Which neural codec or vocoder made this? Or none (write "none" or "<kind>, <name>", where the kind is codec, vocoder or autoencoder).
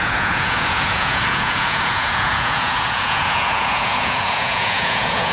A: vocoder, Vocos